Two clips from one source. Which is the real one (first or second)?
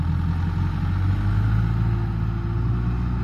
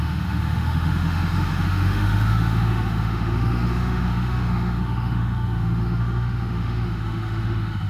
first